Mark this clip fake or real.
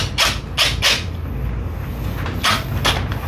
real